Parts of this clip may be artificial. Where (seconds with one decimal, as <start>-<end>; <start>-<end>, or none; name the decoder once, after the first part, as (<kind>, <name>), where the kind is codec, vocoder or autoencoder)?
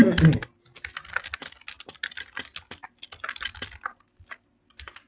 1.4-4.5 (vocoder, BigVGAN v2)